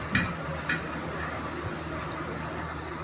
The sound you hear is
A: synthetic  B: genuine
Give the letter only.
B